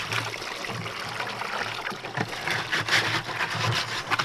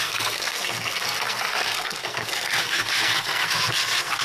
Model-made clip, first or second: second